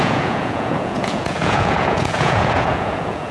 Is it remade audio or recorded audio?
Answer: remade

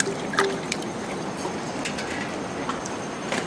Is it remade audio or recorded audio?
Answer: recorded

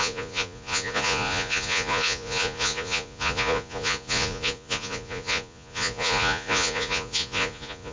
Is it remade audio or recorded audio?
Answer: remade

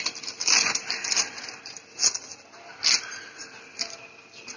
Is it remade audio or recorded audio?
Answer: recorded